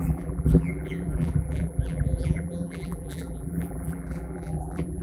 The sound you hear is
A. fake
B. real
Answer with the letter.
A